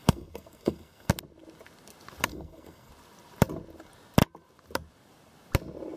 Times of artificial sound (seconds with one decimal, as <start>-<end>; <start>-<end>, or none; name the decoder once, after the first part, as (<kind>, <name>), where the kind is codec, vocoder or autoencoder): 0.0-1.1 (codec, SNAC); 2.3-2.9